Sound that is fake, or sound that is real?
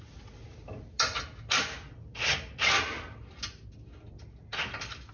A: real